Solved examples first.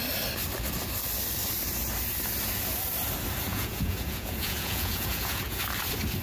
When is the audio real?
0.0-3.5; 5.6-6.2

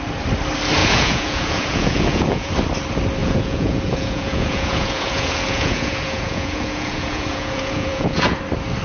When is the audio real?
0.0-0.8; 2.5-3.2; 8.4-8.8

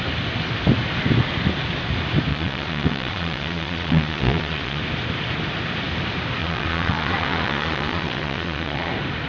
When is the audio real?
0.0-2.3; 4.8-6.4; 8.9-9.3